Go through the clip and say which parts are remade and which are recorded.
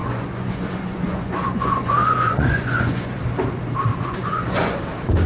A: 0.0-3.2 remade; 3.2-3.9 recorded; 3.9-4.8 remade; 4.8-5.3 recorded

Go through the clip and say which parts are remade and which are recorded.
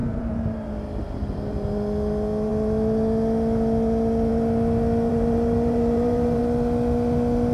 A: 0.0-0.7 remade; 0.7-5.1 recorded; 5.1-6.4 remade; 6.4-7.5 recorded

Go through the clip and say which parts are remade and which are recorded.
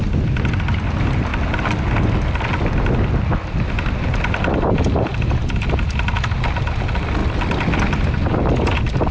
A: 0.0-9.1 recorded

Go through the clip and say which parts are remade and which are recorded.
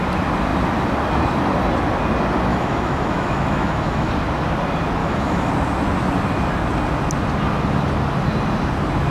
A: 0.0-2.5 recorded; 2.5-4.1 remade; 4.1-5.0 recorded; 5.0-5.5 remade; 5.5-9.1 recorded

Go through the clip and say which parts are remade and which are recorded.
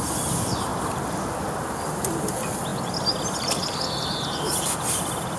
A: 0.0-5.4 recorded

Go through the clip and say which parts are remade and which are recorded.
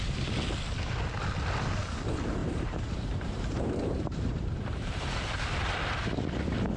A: 0.0-2.4 recorded; 2.4-5.4 remade; 5.4-6.8 recorded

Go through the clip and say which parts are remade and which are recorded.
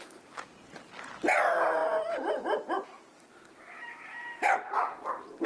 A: 0.0-5.5 recorded